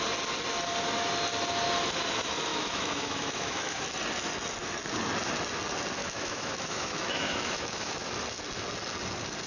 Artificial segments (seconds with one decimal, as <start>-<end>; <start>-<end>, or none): 2.5-3.8; 6.0-8.0